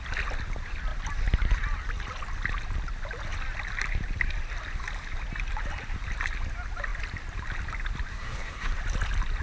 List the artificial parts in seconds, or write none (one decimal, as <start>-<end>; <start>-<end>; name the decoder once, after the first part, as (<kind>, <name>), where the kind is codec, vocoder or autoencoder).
8.1-8.8 (codec, SNAC)